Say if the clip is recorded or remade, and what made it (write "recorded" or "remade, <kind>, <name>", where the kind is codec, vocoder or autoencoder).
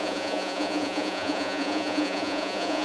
remade, vocoder, Vocos